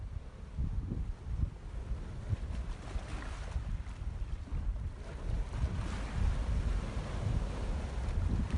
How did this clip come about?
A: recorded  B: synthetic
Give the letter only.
A